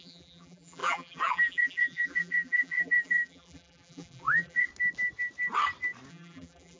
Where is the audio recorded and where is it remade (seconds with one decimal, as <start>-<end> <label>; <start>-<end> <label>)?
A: 0.0-4.7 remade; 4.7-6.1 recorded; 6.1-6.8 remade